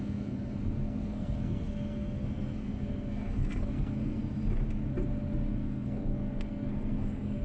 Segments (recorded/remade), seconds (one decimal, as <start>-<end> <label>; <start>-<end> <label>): 0.0-4.2 remade; 4.2-5.5 recorded; 5.5-7.4 remade